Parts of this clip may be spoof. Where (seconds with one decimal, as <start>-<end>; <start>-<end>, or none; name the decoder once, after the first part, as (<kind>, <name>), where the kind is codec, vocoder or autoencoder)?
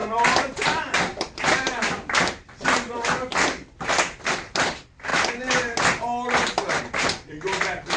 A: 0.0-5.1 (vocoder, BigVGAN v2); 6.8-8.0